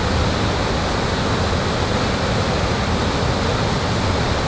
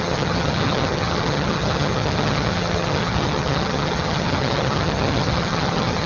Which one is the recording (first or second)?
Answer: first